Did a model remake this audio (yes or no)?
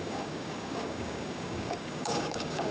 yes